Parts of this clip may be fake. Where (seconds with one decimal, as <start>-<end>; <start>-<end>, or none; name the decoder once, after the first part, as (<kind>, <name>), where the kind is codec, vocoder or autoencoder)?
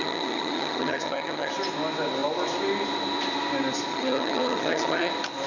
0.0-1.5 (vocoder, HiFi-GAN); 3.9-5.1